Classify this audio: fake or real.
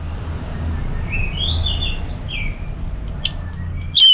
real